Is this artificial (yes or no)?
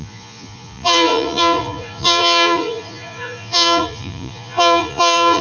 yes